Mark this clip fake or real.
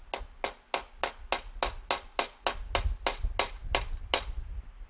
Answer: real